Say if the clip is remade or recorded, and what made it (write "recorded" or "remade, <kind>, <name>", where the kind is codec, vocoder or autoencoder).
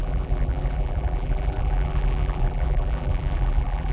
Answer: remade, vocoder, BigVGAN v2